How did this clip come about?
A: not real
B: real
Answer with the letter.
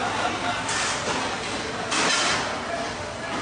B